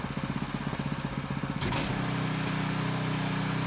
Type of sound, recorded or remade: recorded